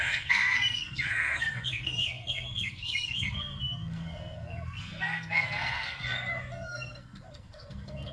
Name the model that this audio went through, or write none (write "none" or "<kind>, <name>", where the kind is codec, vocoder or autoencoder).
codec, SNAC